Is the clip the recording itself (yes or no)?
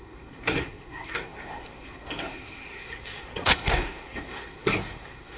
no